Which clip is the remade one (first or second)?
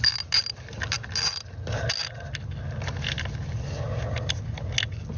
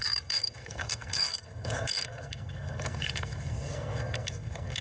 second